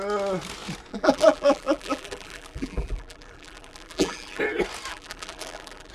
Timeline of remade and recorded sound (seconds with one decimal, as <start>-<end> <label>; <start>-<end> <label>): 0.0-0.9 recorded; 0.9-4.4 remade; 4.4-4.9 recorded; 4.9-5.9 remade